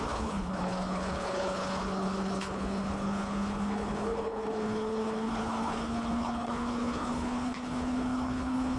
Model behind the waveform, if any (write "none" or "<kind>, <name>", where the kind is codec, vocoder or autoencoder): codec, HILCodec